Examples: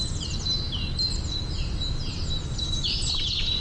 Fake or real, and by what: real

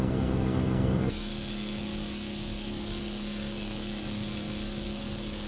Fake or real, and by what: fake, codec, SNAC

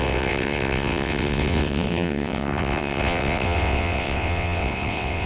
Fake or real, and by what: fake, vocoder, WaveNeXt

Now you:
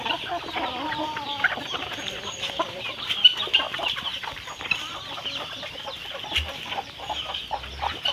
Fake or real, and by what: fake, vocoder, BigVGAN v2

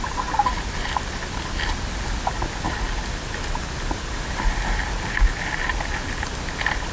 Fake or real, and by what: real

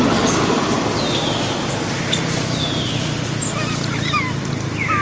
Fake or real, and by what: real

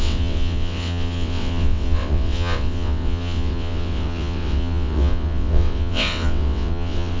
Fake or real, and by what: fake, vocoder, WaveNeXt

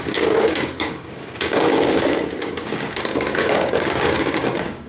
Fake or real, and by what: fake, codec, DAC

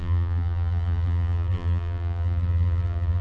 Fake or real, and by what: fake, vocoder, BigVGAN v2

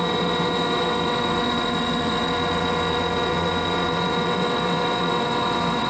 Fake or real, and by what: fake, vocoder, WaveNeXt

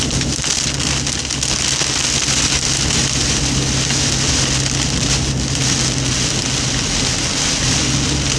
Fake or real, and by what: real